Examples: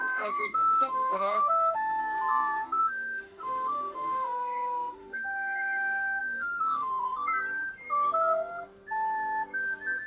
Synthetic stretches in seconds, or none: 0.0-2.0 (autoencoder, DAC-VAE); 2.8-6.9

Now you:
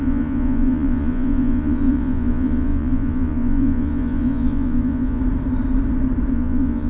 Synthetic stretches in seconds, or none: 0.0-5.2 (vocoder, Vocos); 6.3-6.9

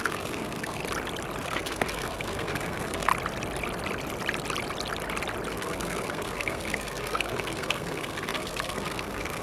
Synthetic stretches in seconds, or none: 0.0-0.8 (codec, SNAC); 1.4-3.1; 5.5-9.4

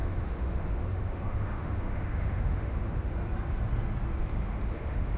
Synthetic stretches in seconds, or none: 0.0-3.1 (autoencoder, DAC-VAE); 4.2-5.2